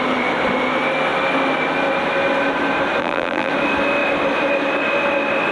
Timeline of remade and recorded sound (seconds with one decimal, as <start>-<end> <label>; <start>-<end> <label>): 0.0-3.0 recorded; 3.0-3.5 remade; 3.5-5.5 recorded